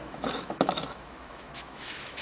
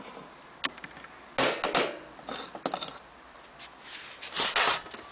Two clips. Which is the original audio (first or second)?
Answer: second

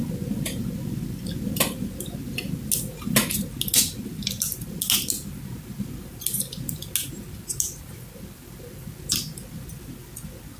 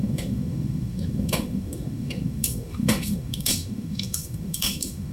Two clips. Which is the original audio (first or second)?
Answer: first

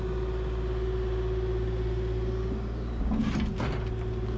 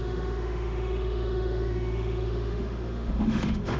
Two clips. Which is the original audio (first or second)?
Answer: first